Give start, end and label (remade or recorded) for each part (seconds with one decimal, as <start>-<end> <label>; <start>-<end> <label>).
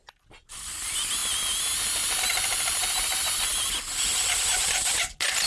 0.0-5.5 recorded